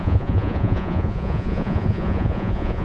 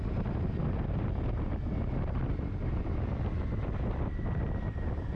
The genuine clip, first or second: second